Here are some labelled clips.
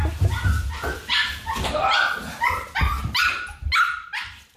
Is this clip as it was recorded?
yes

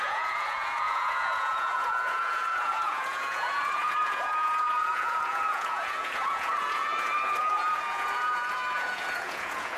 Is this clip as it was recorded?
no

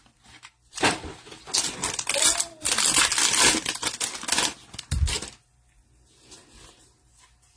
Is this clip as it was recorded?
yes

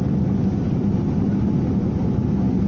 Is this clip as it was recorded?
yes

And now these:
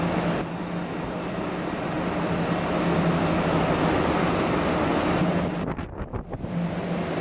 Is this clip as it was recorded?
yes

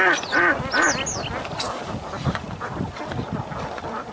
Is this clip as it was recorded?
yes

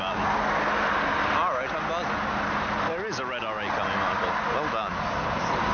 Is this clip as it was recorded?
yes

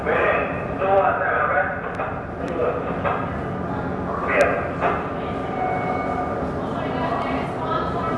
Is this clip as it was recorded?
no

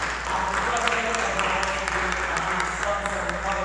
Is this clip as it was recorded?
yes